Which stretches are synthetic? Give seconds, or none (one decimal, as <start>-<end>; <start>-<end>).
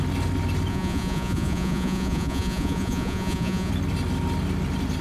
0.7-3.7